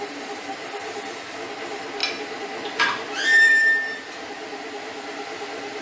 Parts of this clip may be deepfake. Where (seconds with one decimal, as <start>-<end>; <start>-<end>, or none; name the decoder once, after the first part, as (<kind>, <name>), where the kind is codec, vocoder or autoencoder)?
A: 2.0-4.3 (vocoder, BigVGAN v2)